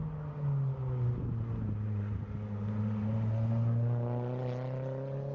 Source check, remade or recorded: recorded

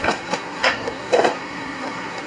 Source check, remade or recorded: remade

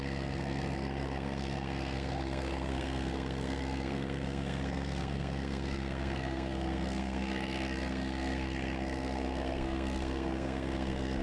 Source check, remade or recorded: remade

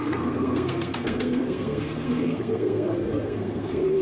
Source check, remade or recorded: remade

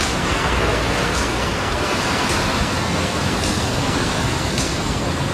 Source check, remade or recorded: remade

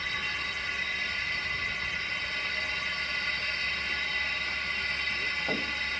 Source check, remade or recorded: recorded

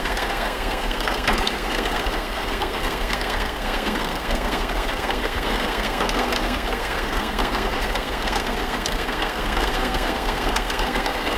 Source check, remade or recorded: remade